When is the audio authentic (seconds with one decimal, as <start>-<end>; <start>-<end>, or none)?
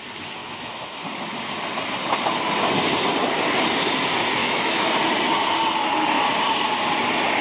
0.0-0.4; 1.0-4.4; 4.9-7.4